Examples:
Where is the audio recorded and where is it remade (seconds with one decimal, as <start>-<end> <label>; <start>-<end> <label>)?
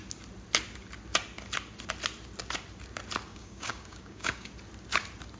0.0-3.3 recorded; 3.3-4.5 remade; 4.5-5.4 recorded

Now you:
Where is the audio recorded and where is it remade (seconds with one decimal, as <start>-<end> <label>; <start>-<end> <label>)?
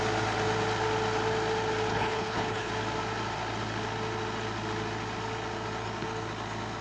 0.0-1.9 recorded; 1.9-2.7 remade; 2.7-6.8 recorded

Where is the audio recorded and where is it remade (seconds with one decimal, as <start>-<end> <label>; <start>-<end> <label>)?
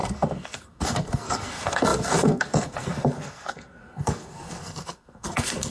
0.0-5.7 remade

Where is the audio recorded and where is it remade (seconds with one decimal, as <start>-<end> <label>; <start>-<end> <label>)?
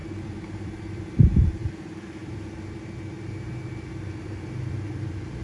0.0-5.4 remade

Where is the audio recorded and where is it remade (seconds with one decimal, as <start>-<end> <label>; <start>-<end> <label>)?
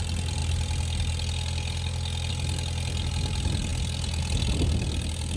0.0-5.4 recorded